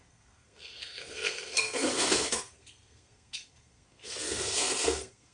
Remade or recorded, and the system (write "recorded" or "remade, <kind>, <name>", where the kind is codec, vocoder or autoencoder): remade, codec, SNAC